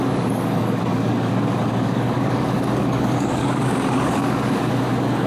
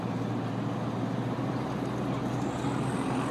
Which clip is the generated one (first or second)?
first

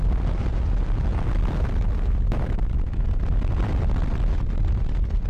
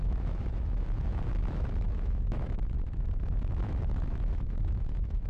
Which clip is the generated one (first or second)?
second